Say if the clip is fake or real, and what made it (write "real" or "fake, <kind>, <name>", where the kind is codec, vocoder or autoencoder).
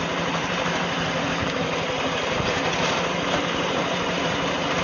fake, vocoder, BigVGAN v2